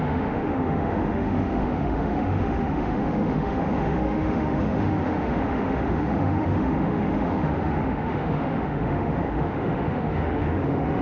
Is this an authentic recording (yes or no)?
no